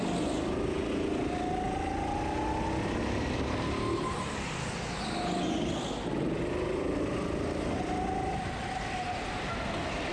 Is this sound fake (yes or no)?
no